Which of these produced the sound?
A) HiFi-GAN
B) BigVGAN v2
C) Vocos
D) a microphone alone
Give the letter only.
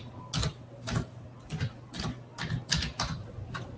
D